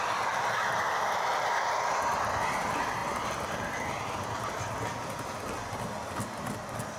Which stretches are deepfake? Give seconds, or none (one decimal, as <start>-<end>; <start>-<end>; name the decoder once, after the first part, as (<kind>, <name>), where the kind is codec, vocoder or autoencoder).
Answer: none